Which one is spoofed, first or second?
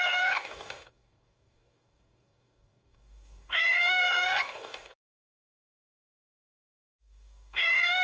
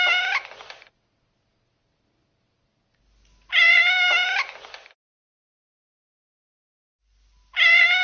first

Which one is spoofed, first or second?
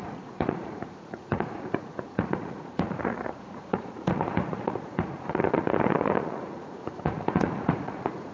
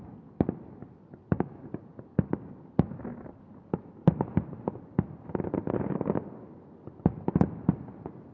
first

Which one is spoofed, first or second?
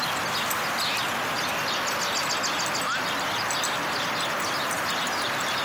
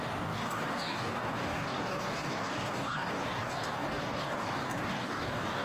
second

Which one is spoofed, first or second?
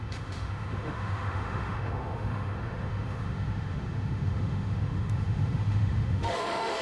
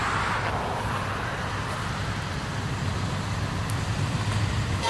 first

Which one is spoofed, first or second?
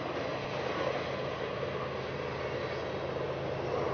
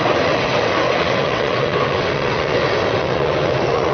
second